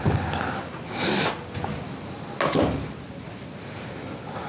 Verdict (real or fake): real